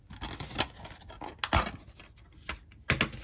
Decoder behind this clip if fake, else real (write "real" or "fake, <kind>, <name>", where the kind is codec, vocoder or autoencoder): real